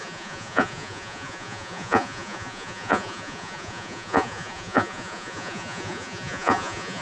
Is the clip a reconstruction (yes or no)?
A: yes